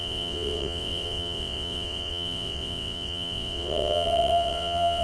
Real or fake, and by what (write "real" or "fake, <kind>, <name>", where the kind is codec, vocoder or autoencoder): fake, vocoder, WaveNeXt